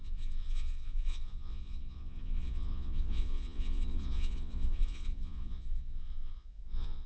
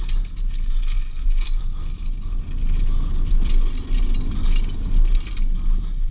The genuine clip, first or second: second